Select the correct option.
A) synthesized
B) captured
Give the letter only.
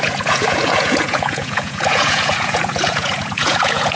A